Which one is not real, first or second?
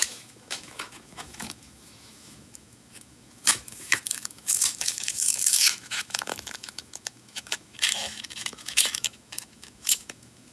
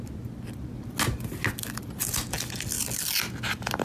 first